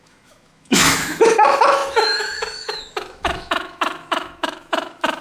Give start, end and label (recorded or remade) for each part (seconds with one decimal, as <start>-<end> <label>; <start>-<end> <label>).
0.0-5.2 remade